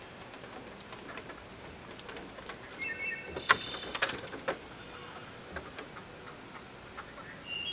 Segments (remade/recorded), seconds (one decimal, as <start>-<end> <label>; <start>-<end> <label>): 0.0-7.7 recorded